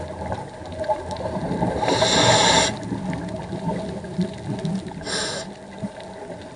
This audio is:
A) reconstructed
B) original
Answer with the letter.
B